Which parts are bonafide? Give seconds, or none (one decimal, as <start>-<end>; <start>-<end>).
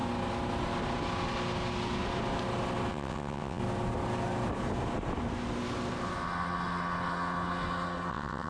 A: 0.0-2.9; 3.6-8.1